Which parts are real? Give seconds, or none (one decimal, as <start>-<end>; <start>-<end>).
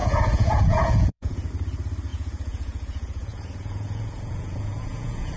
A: 1.5-2.1